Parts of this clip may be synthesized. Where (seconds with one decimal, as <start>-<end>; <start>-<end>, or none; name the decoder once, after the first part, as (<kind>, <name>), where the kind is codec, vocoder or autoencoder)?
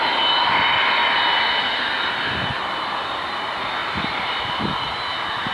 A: 0.0-5.5 (vocoder, BigVGAN v2)